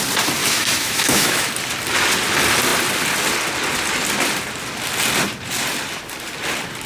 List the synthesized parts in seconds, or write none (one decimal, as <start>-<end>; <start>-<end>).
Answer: 0.4-1.5